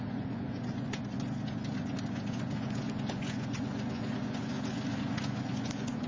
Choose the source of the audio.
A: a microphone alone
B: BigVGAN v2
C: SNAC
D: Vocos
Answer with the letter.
D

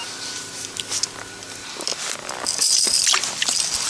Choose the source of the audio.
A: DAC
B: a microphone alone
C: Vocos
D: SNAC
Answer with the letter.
B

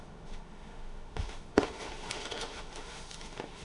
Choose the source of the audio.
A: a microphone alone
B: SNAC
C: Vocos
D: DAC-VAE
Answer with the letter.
D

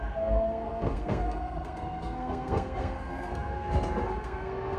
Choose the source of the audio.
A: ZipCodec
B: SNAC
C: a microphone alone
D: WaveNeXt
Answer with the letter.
B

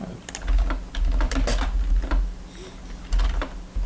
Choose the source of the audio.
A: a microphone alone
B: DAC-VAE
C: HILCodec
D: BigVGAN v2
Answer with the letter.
A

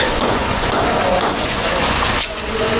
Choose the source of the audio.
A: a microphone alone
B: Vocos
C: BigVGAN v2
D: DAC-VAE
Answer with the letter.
B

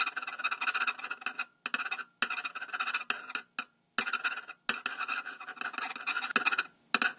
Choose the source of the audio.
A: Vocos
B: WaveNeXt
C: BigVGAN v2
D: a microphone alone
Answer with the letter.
D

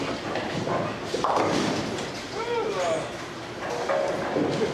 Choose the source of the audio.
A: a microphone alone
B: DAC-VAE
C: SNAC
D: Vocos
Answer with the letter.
A